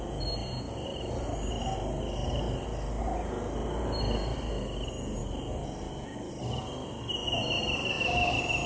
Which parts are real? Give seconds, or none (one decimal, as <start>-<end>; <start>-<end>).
0.0-8.7